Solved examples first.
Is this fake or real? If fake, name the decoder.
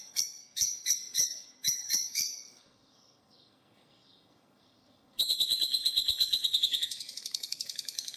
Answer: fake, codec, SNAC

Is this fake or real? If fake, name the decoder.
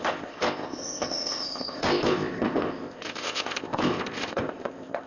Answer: fake, codec, ZipCodec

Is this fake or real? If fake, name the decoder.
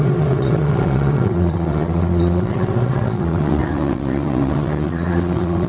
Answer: fake, vocoder, WaveNeXt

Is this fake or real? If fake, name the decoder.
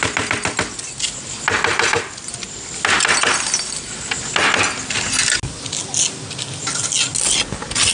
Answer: real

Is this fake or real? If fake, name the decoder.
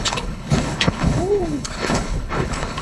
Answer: fake, codec, HILCodec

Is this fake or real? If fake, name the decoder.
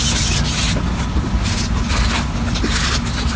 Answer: real